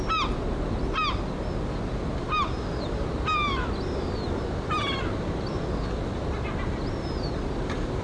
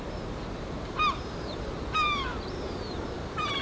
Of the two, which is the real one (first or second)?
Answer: first